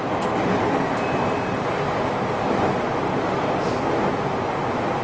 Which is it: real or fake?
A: real